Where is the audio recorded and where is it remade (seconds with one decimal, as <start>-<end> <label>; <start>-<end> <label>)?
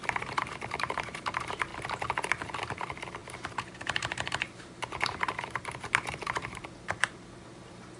0.0-1.7 remade; 1.7-2.6 recorded; 2.6-8.0 remade